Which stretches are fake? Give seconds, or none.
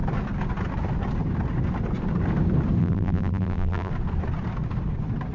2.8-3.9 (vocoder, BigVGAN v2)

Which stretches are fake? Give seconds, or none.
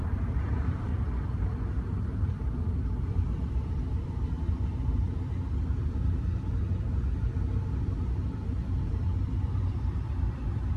0.0-0.9 (vocoder, BigVGAN v2); 2.2-6.3; 8.3-10.8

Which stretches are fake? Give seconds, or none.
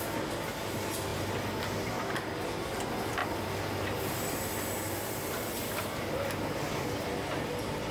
3.2-5.7 (vocoder, BigVGAN v2)